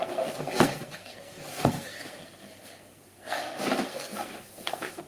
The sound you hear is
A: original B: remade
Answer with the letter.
B